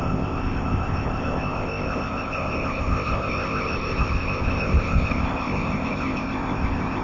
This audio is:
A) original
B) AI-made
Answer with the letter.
B